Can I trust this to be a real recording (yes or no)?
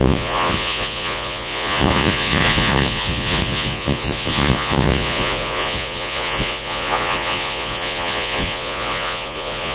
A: no